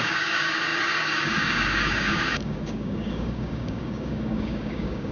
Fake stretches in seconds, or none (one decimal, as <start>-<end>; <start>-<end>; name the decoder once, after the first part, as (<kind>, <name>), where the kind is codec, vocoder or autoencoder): 0.0-5.1 (codec, DAC)